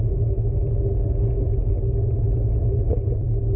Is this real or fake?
real